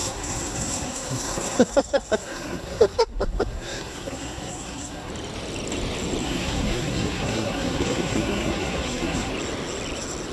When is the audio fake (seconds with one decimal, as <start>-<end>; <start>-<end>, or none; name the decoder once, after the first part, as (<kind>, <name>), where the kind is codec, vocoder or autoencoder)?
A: 0.0-5.1 (codec, SNAC); 6.2-9.3